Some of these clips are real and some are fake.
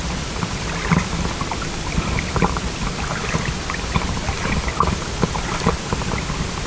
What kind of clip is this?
real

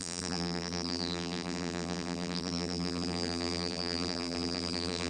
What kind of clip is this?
fake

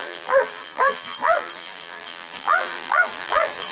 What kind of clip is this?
fake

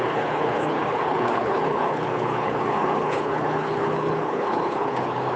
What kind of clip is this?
fake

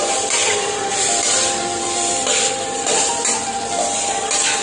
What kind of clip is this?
fake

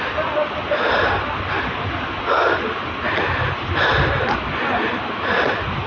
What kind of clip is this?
real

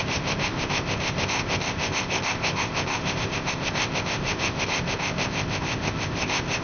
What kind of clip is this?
fake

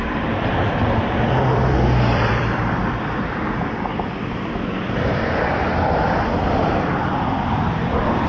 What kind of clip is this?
fake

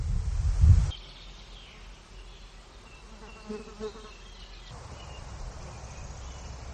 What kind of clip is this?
real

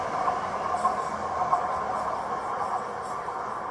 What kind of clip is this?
real